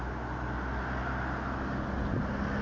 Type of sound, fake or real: real